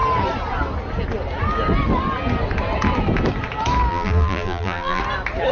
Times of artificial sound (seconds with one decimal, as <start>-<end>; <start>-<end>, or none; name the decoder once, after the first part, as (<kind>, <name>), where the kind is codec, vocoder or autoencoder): 3.9-5.0 (vocoder, BigVGAN v2)